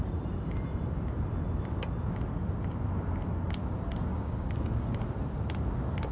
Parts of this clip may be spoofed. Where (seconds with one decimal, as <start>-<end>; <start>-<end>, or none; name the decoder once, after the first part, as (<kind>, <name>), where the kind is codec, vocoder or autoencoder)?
4.1-4.9 (codec, DAC)